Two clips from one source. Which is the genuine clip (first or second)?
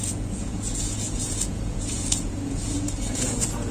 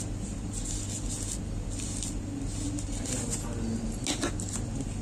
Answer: second